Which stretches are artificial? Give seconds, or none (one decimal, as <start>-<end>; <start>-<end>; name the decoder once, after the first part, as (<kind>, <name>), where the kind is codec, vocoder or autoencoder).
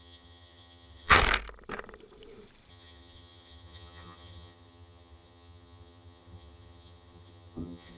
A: 0.0-1.2 (vocoder, HiFi-GAN); 2.7-8.0